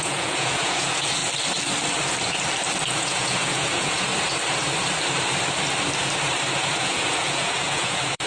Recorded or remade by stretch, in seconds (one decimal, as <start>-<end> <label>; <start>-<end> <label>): 0.0-1.2 remade; 1.2-2.9 recorded; 2.9-4.1 remade; 4.1-6.5 recorded; 6.5-8.3 remade